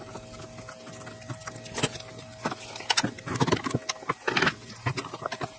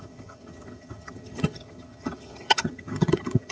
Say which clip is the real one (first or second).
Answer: first